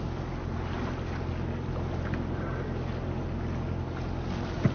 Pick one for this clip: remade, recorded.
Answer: recorded